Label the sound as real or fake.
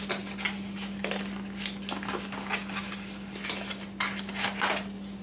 real